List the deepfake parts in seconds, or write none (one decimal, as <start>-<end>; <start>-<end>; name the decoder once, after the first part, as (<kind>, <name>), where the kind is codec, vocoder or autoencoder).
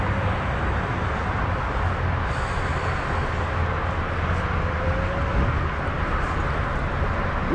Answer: none